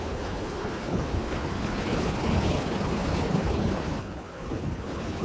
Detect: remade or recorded remade